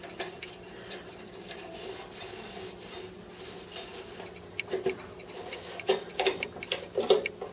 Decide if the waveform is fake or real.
real